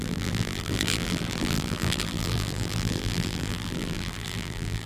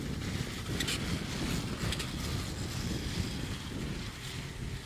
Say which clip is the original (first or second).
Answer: second